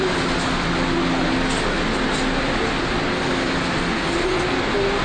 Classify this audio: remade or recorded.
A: recorded